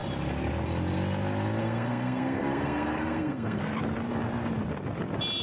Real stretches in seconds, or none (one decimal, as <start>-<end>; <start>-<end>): 0.0-1.6; 3.6-5.4